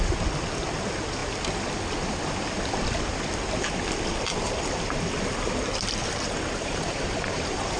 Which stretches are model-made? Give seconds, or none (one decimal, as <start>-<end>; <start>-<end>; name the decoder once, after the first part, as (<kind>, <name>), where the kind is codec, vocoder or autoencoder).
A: 6.0-7.8 (vocoder, BigVGAN v2)